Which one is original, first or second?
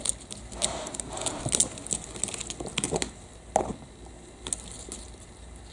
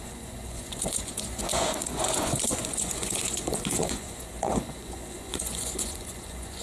first